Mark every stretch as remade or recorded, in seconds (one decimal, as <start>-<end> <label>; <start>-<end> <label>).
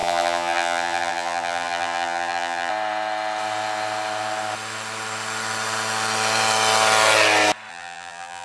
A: 0.0-2.7 remade; 2.7-7.7 recorded; 7.7-8.4 remade